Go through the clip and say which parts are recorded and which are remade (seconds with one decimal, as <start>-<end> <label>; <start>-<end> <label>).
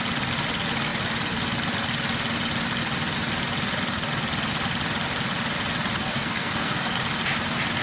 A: 0.0-6.0 recorded; 6.0-7.0 remade; 7.0-7.8 recorded